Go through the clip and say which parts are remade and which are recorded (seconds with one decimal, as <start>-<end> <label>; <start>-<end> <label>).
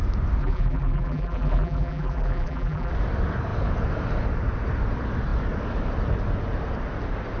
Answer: 0.0-0.4 recorded; 0.4-2.9 remade; 2.9-7.4 recorded